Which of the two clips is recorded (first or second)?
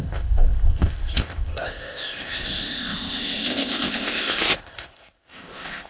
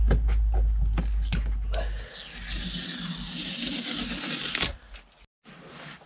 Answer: second